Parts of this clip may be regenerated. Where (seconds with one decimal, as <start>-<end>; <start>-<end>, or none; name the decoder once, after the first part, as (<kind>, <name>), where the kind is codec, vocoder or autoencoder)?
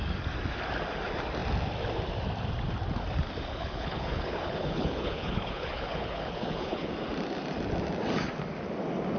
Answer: 3.5-6.9 (codec, HILCodec)